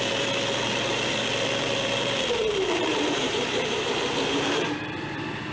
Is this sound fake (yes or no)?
yes